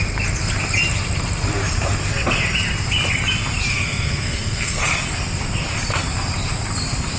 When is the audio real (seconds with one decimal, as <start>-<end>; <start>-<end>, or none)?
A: 0.0-3.7; 4.8-7.2